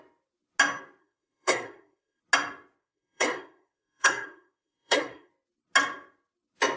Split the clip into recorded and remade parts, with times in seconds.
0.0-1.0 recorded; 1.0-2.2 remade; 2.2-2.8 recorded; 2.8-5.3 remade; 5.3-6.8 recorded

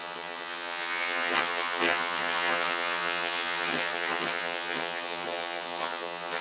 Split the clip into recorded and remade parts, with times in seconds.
0.0-6.4 remade

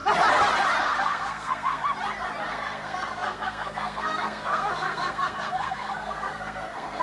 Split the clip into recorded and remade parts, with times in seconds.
0.0-0.8 recorded; 0.8-1.8 remade; 1.8-2.5 recorded; 2.5-7.0 remade

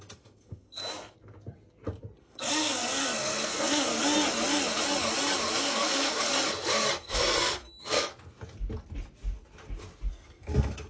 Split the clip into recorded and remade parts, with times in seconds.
0.0-0.8 remade; 0.8-2.2 recorded; 2.2-3.9 remade; 3.9-5.6 recorded; 5.6-6.3 remade; 6.3-7.0 recorded; 7.0-8.1 remade; 8.1-10.1 recorded; 10.1-10.9 remade

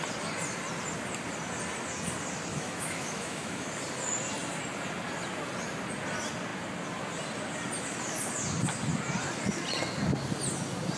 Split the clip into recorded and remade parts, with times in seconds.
0.0-2.5 recorded; 2.5-3.7 remade; 3.7-11.0 recorded

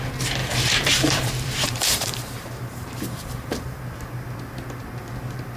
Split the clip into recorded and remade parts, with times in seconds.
0.0-0.4 recorded; 0.4-3.8 remade; 3.8-5.6 recorded

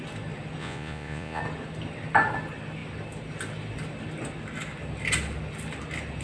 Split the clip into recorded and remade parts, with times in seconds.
0.0-0.6 recorded; 0.6-1.4 remade; 1.4-6.2 recorded

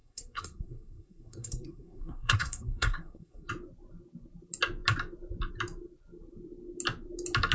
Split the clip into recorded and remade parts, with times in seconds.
0.0-3.5 remade; 3.5-7.5 recorded